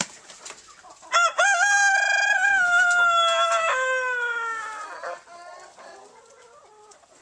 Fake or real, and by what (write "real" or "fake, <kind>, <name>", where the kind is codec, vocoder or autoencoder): real